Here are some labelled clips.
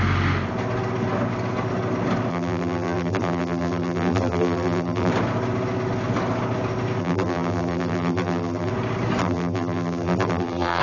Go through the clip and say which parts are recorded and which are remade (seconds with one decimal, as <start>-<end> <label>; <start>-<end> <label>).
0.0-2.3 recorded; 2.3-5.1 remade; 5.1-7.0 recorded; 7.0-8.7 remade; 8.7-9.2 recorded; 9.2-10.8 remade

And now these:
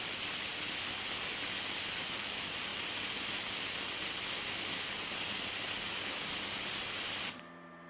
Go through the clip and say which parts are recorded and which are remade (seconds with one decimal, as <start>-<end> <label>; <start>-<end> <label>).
0.0-0.5 remade; 0.5-2.0 recorded; 2.0-2.7 remade; 2.7-7.2 recorded; 7.2-7.9 remade

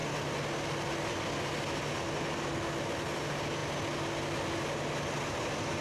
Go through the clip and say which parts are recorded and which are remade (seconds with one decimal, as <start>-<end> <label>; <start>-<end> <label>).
0.0-5.8 recorded

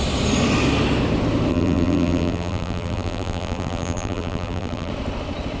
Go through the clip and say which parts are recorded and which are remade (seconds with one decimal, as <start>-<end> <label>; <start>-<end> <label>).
0.0-1.5 recorded; 1.5-4.9 remade; 4.9-5.6 recorded

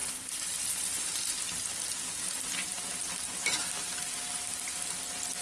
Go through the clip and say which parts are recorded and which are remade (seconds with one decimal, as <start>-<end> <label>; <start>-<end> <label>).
0.0-3.0 remade; 3.0-5.4 recorded

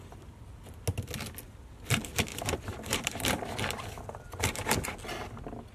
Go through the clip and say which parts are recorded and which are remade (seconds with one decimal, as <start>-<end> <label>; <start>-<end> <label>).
0.0-2.3 recorded; 2.3-4.4 remade; 4.4-5.7 recorded